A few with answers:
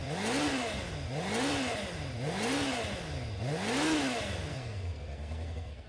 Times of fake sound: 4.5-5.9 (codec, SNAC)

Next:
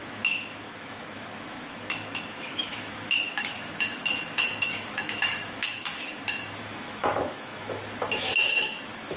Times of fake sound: 0.0-9.2 (autoencoder, DAC-VAE)

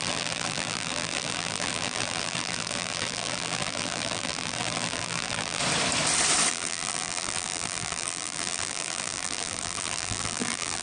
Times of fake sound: 0.0-5.6 (vocoder, BigVGAN v2); 6.5-10.8

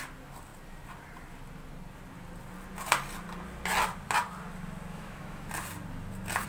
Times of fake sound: 4.9-5.5 (autoencoder, DAC-VAE)

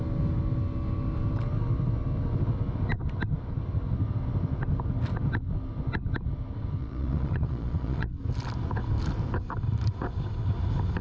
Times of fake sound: 6.8-8.2 (vocoder, Vocos)